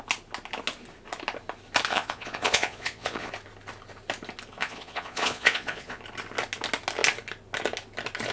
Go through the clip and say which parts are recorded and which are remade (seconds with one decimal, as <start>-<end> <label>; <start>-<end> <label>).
0.0-1.9 recorded; 1.9-3.3 remade; 3.3-4.6 recorded; 4.6-6.0 remade; 6.0-8.3 recorded